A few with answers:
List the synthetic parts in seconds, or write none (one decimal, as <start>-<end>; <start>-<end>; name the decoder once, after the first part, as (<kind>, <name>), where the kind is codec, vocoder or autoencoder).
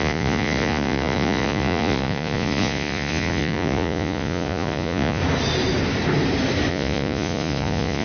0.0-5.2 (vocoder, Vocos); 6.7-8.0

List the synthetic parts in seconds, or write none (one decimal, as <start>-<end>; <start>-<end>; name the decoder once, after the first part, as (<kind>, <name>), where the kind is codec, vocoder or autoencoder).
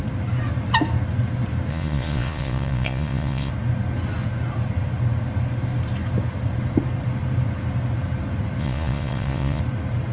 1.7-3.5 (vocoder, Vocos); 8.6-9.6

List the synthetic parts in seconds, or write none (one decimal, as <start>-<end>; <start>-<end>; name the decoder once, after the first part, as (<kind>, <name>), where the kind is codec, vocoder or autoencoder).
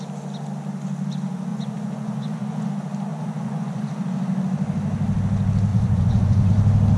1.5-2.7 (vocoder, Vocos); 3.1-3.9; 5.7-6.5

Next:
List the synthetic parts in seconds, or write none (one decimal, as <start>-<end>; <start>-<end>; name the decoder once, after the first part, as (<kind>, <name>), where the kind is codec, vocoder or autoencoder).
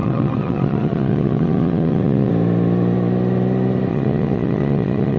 0.0-2.3 (vocoder, Vocos); 3.9-5.2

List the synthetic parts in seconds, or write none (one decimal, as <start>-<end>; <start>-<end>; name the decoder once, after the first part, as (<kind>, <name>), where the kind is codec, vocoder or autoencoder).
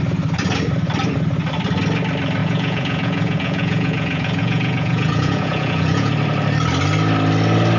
2.4-6.1 (vocoder, Vocos)